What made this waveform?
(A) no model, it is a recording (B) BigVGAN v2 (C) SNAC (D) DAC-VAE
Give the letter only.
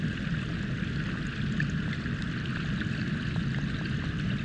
A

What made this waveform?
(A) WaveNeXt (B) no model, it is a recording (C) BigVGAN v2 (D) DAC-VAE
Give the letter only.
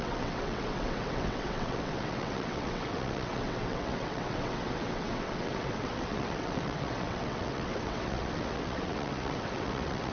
A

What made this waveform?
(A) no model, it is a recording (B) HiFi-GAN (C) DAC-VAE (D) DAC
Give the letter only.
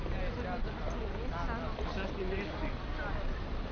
A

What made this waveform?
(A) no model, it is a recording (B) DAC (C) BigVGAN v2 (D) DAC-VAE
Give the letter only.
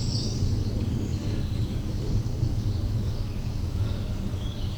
B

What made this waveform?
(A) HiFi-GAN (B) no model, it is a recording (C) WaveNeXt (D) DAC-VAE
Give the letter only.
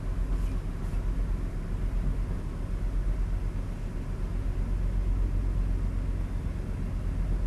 B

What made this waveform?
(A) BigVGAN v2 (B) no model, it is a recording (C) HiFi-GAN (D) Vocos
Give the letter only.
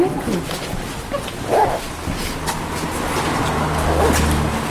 B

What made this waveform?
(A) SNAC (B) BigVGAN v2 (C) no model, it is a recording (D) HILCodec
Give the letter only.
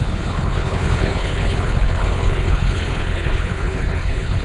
D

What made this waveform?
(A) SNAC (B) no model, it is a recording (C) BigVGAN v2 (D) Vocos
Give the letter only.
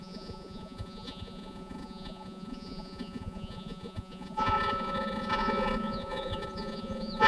D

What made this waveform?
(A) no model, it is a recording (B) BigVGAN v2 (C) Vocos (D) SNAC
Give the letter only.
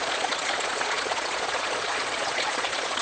C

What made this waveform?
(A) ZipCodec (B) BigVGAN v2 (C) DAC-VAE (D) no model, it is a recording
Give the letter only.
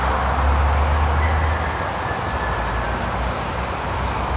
D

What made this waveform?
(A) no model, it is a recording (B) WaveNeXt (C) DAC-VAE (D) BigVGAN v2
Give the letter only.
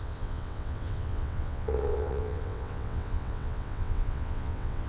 B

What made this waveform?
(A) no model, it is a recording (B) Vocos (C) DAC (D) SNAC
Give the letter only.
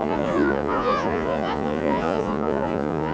B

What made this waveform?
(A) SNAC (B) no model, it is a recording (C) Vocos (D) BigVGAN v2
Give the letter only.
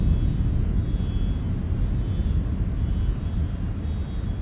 B